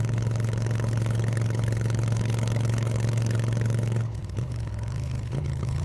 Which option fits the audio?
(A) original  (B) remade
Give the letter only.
B